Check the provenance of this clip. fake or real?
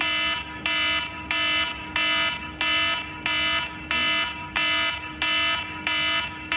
real